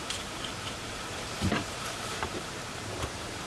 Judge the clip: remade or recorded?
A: remade